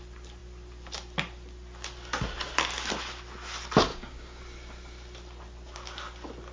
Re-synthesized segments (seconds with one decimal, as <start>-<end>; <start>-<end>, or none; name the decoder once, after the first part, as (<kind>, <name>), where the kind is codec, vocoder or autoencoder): 3.9-4.4 (codec, DAC)